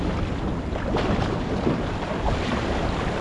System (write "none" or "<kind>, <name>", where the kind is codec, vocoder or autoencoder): vocoder, BigVGAN v2